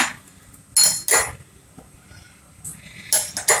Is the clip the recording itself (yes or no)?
yes